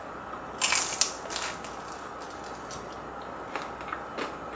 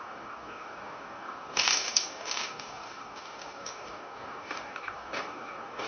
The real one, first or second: first